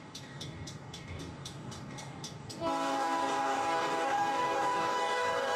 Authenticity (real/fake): fake